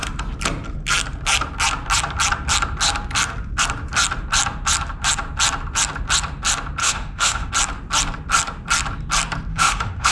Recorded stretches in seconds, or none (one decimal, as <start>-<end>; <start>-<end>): 0.0-6.8; 7.5-9.5